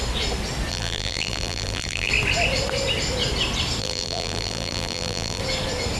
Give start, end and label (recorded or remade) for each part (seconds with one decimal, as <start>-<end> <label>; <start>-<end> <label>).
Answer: 0.0-0.7 recorded; 0.7-2.1 remade; 2.1-3.8 recorded; 3.8-5.4 remade; 5.4-6.0 recorded